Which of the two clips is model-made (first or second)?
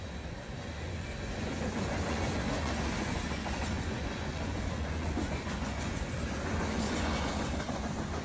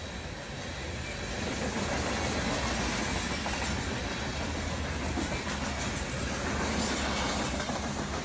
first